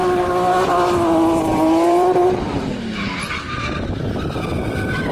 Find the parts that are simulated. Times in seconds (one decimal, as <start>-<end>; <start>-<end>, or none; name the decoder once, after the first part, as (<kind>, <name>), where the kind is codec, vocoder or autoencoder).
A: 1.5-2.2 (vocoder, BigVGAN v2); 3.5-5.1